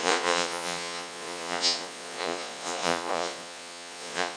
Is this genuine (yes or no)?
no